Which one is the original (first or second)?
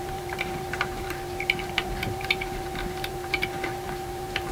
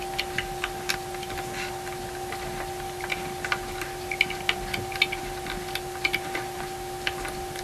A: second